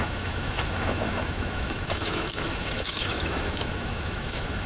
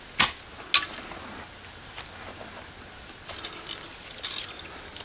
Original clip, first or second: second